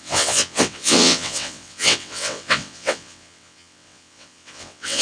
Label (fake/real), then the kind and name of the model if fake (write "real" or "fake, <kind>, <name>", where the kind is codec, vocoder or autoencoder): fake, vocoder, WaveNeXt